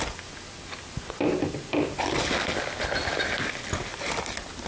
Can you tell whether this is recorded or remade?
recorded